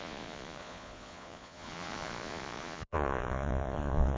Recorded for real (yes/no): no